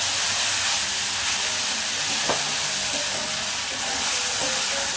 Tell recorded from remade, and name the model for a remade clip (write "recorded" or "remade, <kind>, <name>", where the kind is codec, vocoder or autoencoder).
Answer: recorded